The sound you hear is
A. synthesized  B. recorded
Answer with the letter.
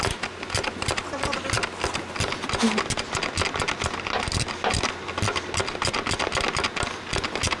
B